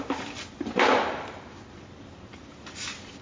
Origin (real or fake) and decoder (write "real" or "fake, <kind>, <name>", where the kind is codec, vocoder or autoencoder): fake, vocoder, BigVGAN v2